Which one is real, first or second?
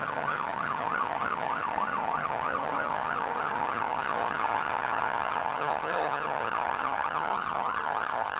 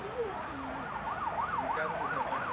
second